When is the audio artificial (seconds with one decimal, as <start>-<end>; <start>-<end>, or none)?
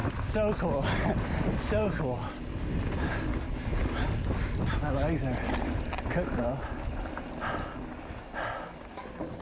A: none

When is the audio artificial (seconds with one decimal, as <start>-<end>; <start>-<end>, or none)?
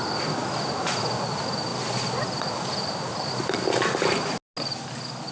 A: none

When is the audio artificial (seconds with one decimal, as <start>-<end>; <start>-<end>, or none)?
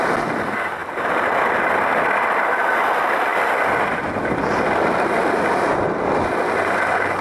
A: none